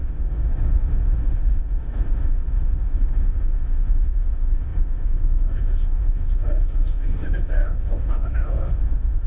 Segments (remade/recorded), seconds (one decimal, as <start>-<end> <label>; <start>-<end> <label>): 0.0-9.3 remade